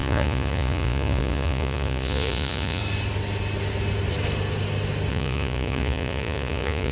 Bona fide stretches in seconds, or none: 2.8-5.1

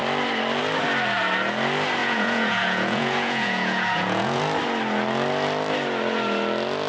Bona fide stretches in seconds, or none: 0.0-2.0; 4.4-6.9

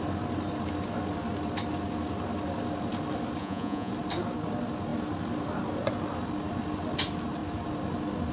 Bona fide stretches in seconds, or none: 0.0-3.4; 3.9-8.3